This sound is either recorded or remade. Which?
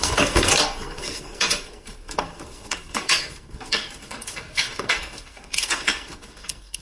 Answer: remade